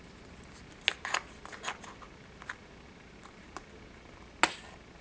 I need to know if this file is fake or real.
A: real